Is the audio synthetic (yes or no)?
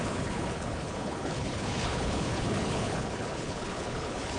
yes